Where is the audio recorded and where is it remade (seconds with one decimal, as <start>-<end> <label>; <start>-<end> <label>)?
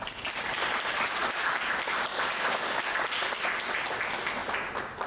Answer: 0.0-2.1 recorded; 2.1-2.8 remade; 2.8-5.1 recorded